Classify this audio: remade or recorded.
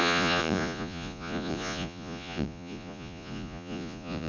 remade